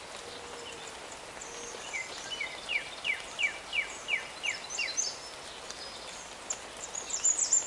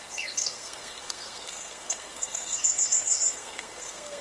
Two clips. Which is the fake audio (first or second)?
second